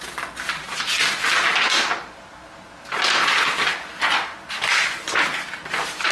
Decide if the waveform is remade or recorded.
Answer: recorded